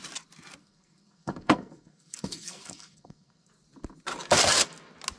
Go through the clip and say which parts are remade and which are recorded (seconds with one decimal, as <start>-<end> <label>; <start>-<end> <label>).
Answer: 0.0-0.6 recorded; 0.6-3.5 remade; 3.5-5.2 recorded